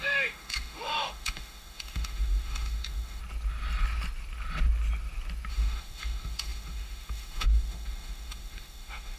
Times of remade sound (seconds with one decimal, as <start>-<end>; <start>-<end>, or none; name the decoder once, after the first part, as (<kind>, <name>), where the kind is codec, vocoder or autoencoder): 0.0-3.2 (autoencoder, DAC-VAE); 5.5-9.2